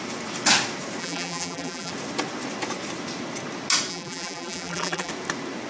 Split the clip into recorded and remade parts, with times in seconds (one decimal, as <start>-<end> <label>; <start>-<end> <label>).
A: 0.0-1.0 recorded; 1.0-1.9 remade; 1.9-3.9 recorded; 3.9-5.1 remade; 5.1-5.7 recorded